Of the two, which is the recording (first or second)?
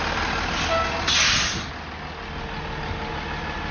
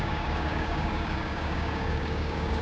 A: first